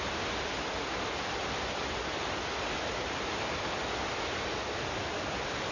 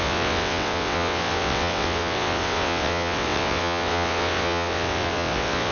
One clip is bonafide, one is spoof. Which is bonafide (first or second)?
first